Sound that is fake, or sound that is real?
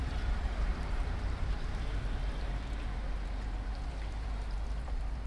fake